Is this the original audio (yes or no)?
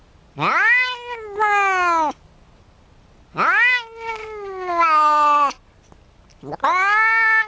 yes